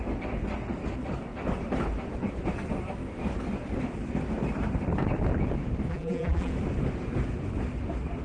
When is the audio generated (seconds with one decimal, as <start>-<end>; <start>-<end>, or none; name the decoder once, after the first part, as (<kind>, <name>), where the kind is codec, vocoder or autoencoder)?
5.9-6.5 (vocoder, BigVGAN v2)